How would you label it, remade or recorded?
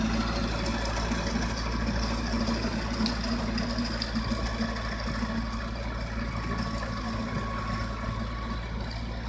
recorded